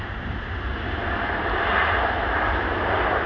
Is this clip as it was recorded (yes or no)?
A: yes